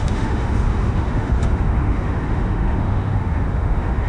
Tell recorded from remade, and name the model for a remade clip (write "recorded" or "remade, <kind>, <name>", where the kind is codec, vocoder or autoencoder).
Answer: remade, autoencoder, DAC-VAE